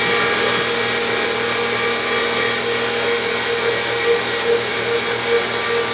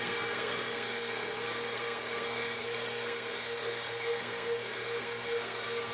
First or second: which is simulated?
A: second